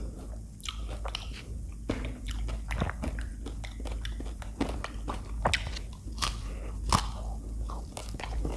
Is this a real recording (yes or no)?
yes